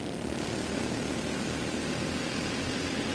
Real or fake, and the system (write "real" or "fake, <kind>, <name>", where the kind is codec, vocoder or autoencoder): real